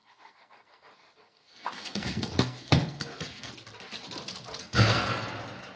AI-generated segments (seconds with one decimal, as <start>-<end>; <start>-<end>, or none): 0.0-3.5; 4.6-5.3